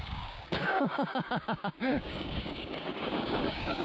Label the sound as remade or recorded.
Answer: remade